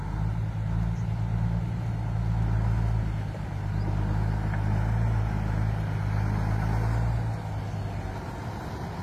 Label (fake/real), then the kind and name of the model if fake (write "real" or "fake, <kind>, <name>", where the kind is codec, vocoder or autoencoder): real